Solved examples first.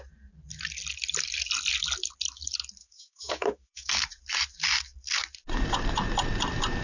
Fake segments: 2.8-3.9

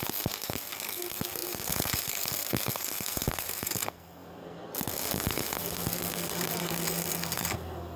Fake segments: 0.0-8.0

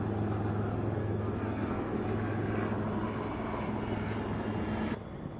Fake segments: 1.0-2.0

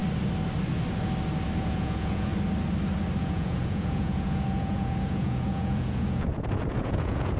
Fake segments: 1.6-2.3; 3.2-7.4